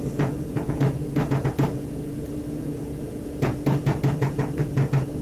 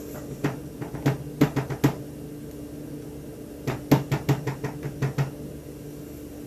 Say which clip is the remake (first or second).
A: first